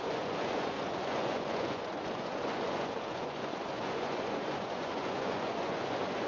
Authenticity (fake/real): fake